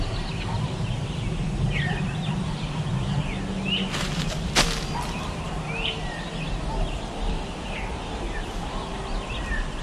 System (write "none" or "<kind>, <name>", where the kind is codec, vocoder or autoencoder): none